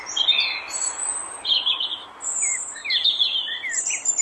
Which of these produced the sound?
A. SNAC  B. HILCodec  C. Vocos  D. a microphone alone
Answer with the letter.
D